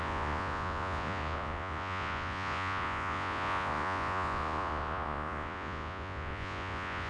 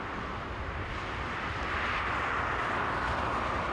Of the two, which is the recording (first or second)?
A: second